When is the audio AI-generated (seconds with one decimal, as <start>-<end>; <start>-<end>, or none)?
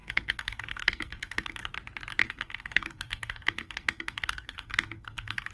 0.0-1.6; 2.2-5.5